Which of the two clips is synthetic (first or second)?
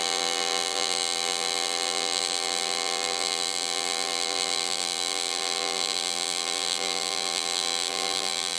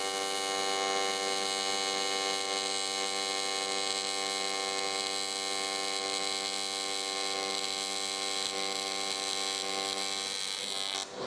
first